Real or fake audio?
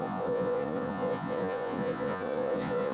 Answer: fake